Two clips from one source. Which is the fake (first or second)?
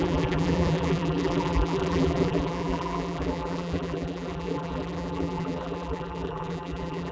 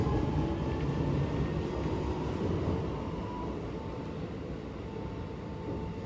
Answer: first